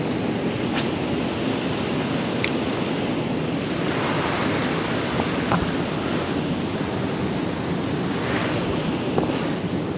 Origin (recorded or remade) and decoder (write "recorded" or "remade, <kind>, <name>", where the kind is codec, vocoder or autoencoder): recorded